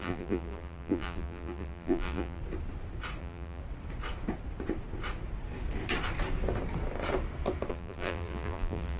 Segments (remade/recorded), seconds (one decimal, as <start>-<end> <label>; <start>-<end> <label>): 0.0-2.4 remade; 2.4-3.2 recorded; 3.2-3.6 remade; 3.6-7.7 recorded; 7.7-9.0 remade